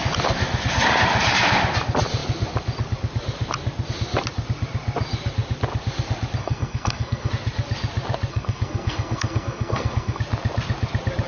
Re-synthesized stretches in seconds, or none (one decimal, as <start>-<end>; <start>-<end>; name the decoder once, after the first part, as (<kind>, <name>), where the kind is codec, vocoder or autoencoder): 6.4-7.3 (codec, SNAC); 8.3-10.2